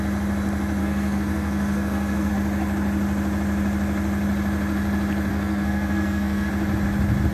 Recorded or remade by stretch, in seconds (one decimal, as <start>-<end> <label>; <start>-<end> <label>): 0.0-0.8 recorded; 0.8-2.3 remade; 2.3-5.3 recorded; 5.3-6.5 remade; 6.5-7.3 recorded